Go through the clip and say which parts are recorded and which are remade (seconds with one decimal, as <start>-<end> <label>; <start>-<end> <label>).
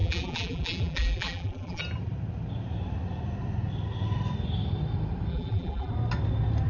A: 0.0-1.8 remade; 1.8-5.3 recorded; 5.3-5.9 remade; 5.9-6.7 recorded